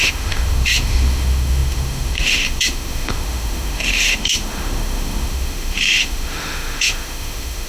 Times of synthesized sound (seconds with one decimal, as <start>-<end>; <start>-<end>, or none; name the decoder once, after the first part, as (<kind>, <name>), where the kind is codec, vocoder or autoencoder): 0.0-7.7 (autoencoder, DAC-VAE)